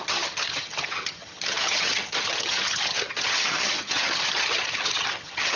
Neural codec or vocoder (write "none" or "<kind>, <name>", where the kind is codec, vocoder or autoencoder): vocoder, HiFi-GAN